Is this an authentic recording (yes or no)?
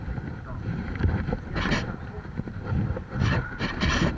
no